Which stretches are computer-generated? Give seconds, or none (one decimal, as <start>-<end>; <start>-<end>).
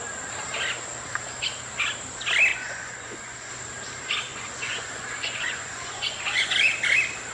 2.5-3.5; 4.3-6.5